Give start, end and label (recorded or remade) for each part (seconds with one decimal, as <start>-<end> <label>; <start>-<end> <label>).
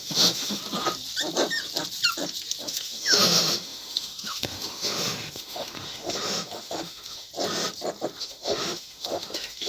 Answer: 0.0-0.6 remade; 0.6-2.6 recorded; 2.6-7.3 remade; 7.3-8.2 recorded; 8.2-9.7 remade